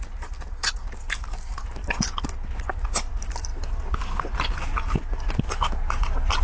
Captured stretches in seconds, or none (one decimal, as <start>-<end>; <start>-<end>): 0.0-6.4